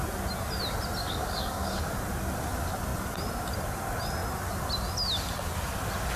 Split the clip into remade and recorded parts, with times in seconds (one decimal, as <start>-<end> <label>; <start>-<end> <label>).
0.0-1.0 recorded; 1.0-1.9 remade; 1.9-6.2 recorded